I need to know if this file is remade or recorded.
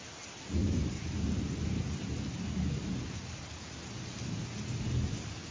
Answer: recorded